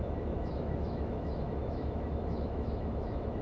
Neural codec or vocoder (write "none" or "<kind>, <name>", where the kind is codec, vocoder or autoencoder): autoencoder, DAC-VAE